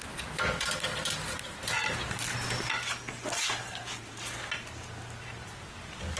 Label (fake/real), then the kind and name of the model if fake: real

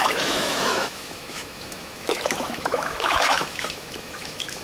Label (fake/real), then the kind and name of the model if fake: fake, autoencoder, DAC-VAE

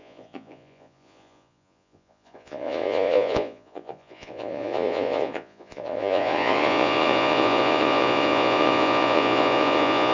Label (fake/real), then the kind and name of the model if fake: fake, vocoder, Vocos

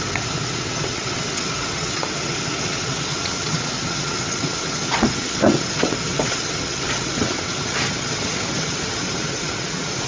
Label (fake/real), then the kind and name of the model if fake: fake, vocoder, WaveNeXt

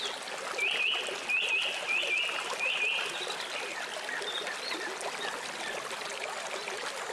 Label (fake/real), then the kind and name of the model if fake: real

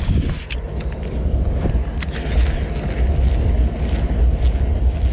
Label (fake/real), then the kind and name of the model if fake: real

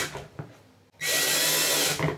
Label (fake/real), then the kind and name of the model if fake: real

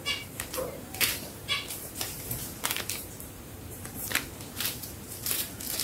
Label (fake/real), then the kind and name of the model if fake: fake, vocoder, BigVGAN v2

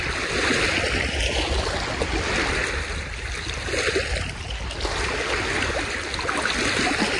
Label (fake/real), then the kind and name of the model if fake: real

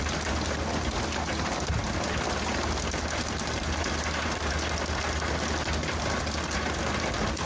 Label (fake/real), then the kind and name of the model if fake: real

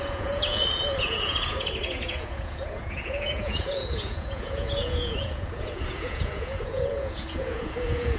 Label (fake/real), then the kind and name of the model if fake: fake, vocoder, Vocos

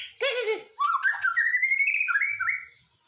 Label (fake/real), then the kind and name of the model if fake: real